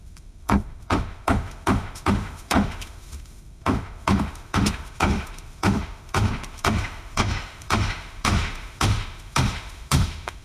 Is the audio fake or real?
fake